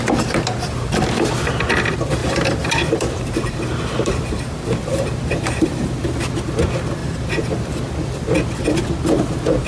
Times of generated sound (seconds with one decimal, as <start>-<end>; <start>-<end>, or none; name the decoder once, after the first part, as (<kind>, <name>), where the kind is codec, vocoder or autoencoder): 2.2-5.9 (vocoder, BigVGAN v2); 7.0-7.7